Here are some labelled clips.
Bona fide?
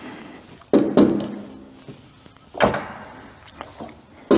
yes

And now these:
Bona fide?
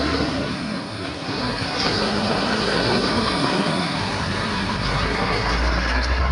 no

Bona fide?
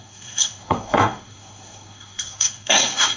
no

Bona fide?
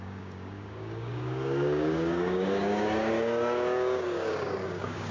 no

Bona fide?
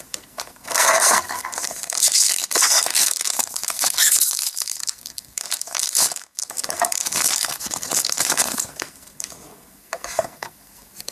no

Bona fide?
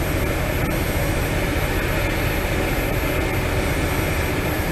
yes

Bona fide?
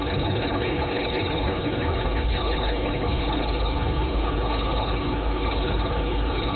no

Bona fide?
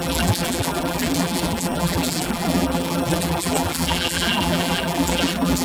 no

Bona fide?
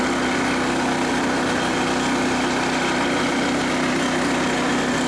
yes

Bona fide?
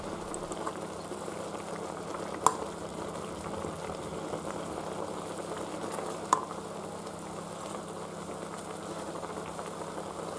yes